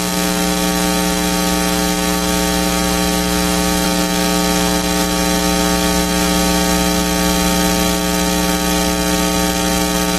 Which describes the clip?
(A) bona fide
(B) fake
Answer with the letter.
A